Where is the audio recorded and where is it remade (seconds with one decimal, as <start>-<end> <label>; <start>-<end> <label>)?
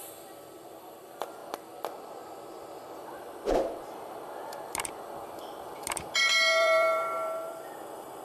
0.0-1.4 remade; 1.4-6.2 recorded; 6.2-8.2 remade